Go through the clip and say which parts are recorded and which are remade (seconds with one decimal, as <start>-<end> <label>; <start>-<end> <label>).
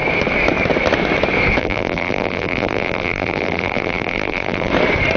0.0-1.6 recorded; 1.6-4.7 remade; 4.7-5.2 recorded